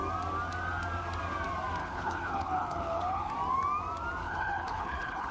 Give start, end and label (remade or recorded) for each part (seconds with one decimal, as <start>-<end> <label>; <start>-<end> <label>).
0.0-1.8 recorded; 1.8-3.3 remade; 3.3-4.2 recorded; 4.2-5.3 remade